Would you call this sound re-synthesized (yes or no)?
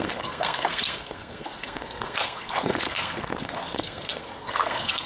yes